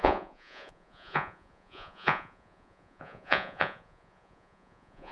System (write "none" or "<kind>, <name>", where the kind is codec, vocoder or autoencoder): vocoder, Vocos